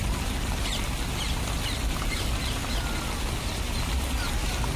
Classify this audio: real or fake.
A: real